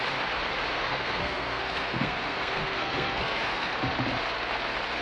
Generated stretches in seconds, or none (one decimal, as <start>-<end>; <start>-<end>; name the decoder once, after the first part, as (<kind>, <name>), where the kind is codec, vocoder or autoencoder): 0.7-3.7 (codec, SNAC)

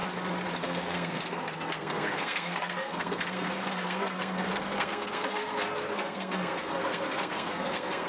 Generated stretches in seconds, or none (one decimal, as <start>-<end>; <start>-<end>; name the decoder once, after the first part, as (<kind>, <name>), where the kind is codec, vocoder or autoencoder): 0.6-8.1 (codec, SNAC)